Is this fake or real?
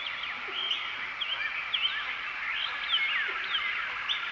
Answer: real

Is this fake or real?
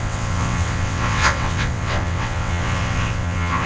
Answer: fake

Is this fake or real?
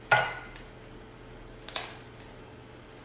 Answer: real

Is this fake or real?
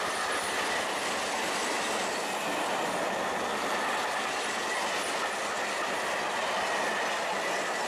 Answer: real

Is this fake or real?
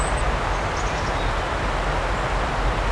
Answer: real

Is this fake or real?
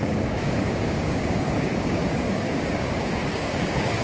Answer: fake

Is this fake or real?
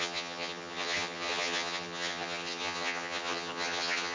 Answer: fake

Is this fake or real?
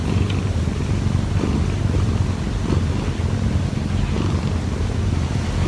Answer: real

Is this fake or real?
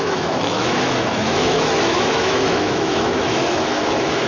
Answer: fake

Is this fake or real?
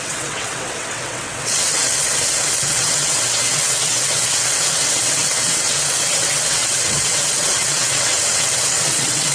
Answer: fake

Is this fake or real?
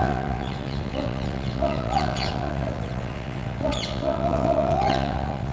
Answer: fake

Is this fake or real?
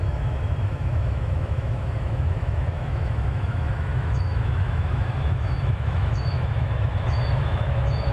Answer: fake